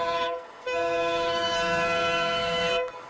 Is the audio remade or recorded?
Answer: remade